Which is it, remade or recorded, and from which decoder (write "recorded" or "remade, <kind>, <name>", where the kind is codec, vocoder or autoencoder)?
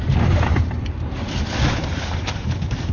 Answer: remade, vocoder, BigVGAN v2